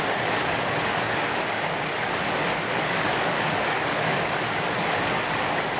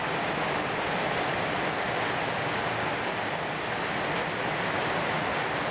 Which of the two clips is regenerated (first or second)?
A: first